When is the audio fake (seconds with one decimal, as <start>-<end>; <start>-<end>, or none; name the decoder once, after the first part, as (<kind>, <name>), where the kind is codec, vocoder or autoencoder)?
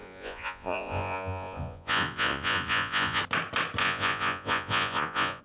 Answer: 0.0-3.2 (vocoder, Vocos); 3.8-5.4